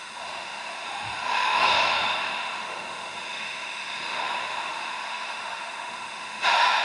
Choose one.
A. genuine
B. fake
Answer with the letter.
B